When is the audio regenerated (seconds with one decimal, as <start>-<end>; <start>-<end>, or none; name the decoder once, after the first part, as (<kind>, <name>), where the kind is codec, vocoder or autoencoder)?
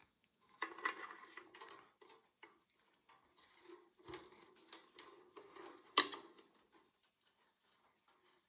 0.0-0.7 (autoencoder, DAC-VAE)